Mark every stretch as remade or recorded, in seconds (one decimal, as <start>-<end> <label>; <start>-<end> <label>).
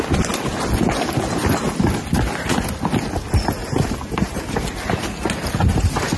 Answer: 0.0-3.6 recorded; 3.6-4.4 remade; 4.4-5.4 recorded; 5.4-6.2 remade